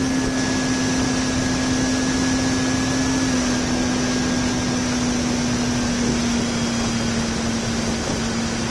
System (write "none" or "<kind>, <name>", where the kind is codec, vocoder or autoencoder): none